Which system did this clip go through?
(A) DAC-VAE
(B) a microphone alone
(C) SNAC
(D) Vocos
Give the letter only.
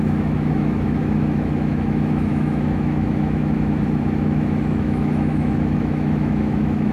A